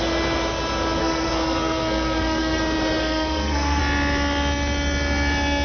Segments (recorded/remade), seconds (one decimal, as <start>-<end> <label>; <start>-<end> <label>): 0.0-1.0 recorded; 1.0-2.6 remade; 2.6-3.0 recorded; 3.0-3.8 remade; 3.8-5.6 recorded